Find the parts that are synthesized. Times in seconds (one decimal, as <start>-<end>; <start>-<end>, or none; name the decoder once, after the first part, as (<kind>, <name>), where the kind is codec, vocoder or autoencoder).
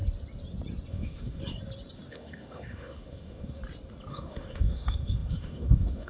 0.9-1.4 (autoencoder, DAC-VAE); 2.1-3.6; 4.1-6.1